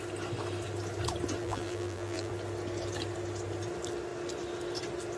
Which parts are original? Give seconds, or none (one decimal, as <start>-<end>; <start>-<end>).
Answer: 0.0-1.4; 2.3-5.2